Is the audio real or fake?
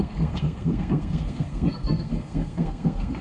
fake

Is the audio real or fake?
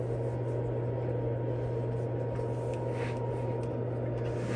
real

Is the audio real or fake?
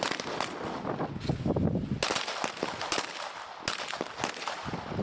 real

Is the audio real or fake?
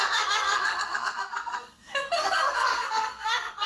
fake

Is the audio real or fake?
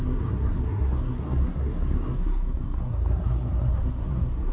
fake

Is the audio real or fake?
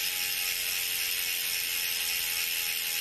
real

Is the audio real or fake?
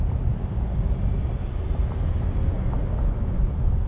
real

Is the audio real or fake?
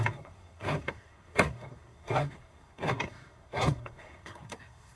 fake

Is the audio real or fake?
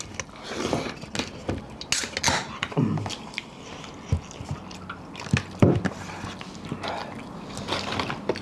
real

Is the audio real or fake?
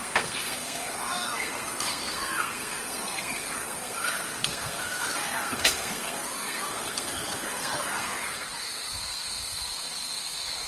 fake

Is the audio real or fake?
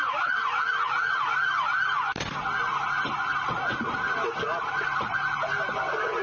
real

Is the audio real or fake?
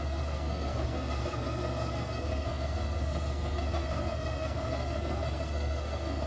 fake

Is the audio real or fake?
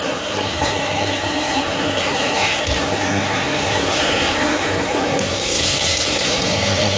fake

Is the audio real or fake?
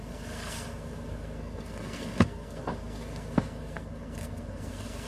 fake